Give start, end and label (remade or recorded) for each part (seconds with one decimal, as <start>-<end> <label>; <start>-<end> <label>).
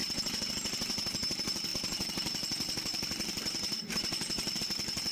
0.0-1.7 recorded; 1.7-4.6 remade; 4.6-5.1 recorded